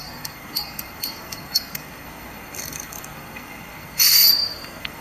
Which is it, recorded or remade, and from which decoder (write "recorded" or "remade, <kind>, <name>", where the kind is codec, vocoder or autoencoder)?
remade, codec, SNAC